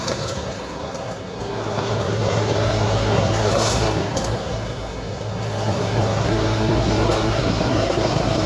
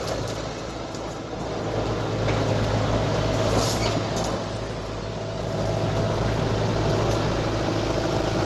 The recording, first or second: second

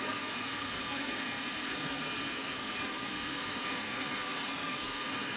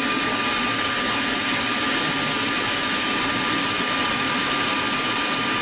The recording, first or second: second